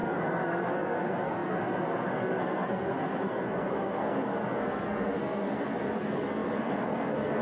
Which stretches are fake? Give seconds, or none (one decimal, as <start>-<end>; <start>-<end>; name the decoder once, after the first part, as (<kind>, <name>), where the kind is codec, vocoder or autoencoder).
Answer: 0.0-7.4 (codec, SNAC)